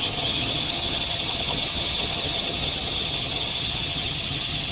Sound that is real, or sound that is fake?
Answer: fake